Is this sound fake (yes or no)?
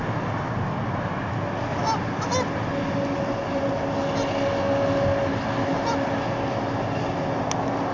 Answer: no